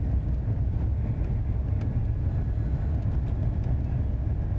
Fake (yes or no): no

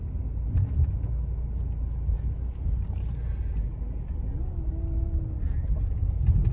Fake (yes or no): no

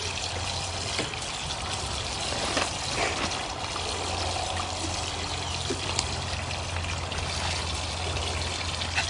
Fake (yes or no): no